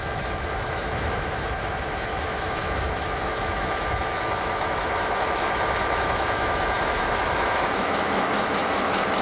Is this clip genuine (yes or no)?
no